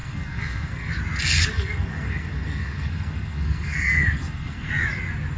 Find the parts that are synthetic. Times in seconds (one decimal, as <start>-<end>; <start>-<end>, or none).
0.0-0.9; 1.5-4.7